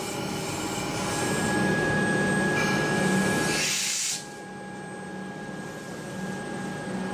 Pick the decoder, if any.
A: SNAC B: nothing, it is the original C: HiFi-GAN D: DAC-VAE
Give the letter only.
B